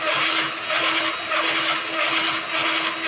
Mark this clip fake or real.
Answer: real